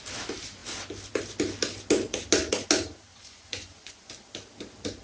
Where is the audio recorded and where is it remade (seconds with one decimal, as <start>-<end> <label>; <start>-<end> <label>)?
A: 0.0-3.1 recorded; 3.1-4.1 remade; 4.1-5.0 recorded